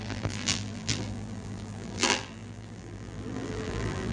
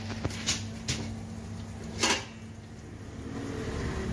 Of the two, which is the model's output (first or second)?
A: first